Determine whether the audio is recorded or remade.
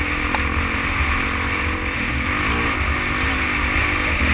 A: recorded